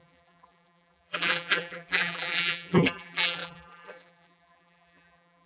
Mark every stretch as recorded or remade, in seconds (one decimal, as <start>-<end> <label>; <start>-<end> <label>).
0.0-5.5 remade